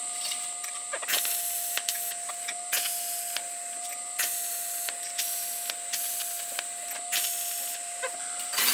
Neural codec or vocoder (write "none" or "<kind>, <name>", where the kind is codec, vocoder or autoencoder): none